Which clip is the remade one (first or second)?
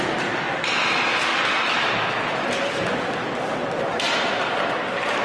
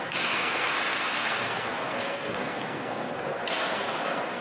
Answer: second